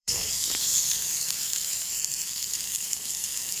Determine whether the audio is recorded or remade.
remade